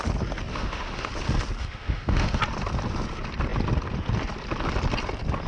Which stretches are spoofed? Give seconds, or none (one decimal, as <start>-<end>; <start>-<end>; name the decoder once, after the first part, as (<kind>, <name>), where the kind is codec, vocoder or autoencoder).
0.5-1.1 (autoencoder, DAC-VAE); 1.6-2.4